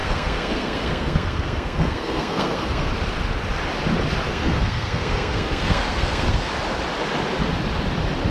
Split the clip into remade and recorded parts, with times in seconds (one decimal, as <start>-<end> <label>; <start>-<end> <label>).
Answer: 0.0-2.9 remade; 2.9-4.3 recorded; 4.3-6.5 remade; 6.5-8.3 recorded